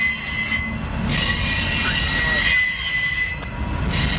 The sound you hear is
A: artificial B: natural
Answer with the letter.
B